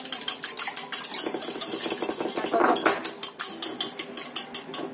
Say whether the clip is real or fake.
real